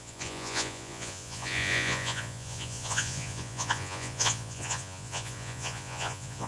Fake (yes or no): yes